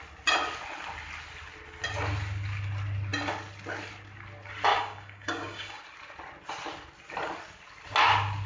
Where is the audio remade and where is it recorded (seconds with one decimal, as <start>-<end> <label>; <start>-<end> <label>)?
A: 0.0-4.7 recorded; 4.7-5.8 remade; 5.8-8.5 recorded